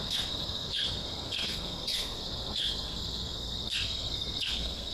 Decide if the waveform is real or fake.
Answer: fake